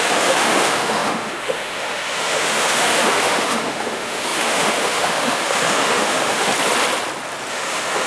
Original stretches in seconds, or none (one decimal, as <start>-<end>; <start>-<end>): 6.5-7.5